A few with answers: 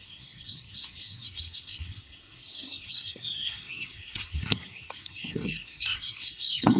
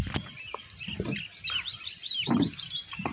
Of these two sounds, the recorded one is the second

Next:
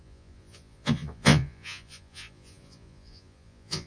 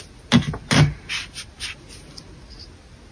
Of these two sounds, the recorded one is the second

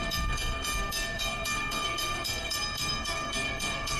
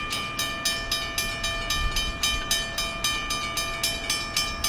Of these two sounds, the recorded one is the second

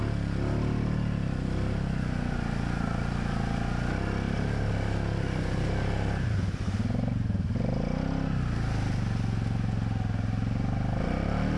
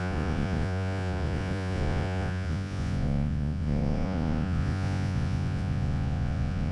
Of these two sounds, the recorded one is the first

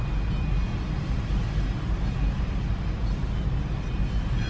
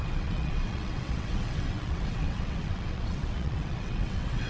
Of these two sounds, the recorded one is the first